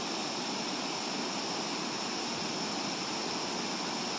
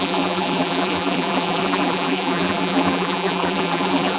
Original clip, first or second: first